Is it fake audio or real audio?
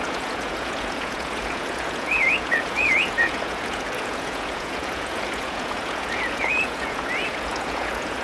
fake